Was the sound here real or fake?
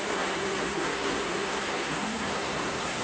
fake